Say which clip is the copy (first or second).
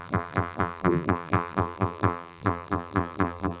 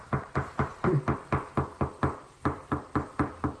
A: first